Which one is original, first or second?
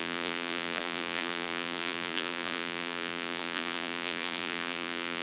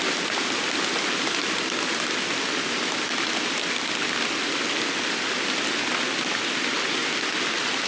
second